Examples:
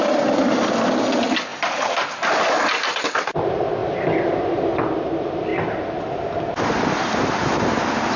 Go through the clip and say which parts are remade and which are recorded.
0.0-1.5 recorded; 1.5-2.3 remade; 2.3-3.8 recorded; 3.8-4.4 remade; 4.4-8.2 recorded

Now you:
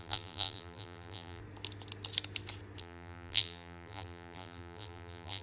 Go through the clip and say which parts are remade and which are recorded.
0.0-1.4 remade; 1.4-2.8 recorded; 2.8-5.4 remade

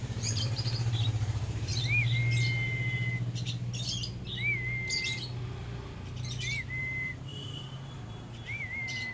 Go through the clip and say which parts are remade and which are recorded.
0.0-1.7 remade; 1.7-6.8 recorded; 6.8-9.1 remade

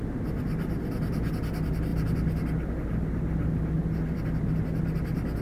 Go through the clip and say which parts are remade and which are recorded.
0.0-5.4 recorded

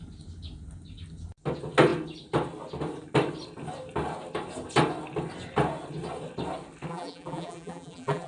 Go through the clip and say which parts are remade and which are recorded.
0.0-6.9 recorded; 6.9-8.3 remade

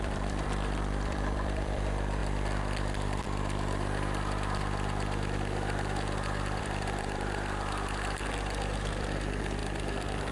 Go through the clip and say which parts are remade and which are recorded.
0.0-2.2 remade; 2.2-6.6 recorded; 6.6-10.3 remade

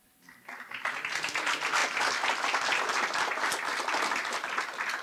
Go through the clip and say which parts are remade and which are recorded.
0.0-5.0 recorded